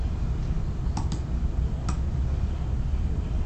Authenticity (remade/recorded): recorded